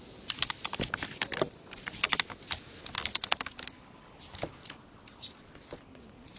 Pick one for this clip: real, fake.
real